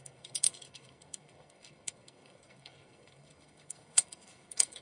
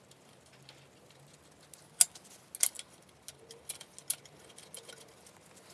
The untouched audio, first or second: second